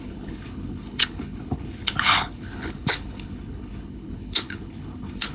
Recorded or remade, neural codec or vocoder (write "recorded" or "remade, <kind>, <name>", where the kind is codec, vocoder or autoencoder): remade, codec, HILCodec